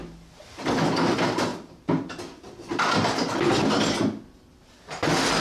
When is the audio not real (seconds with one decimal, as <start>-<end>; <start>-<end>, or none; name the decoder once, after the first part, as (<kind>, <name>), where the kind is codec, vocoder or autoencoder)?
none